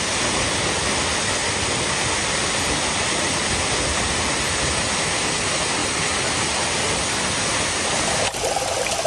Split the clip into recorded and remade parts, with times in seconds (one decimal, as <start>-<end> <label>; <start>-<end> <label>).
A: 0.0-9.1 recorded